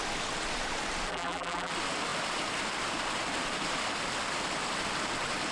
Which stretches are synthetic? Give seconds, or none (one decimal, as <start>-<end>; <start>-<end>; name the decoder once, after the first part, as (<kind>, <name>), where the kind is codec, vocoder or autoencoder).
1.1-1.7 (vocoder, BigVGAN v2)